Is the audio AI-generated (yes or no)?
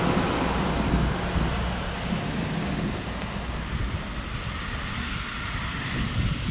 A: no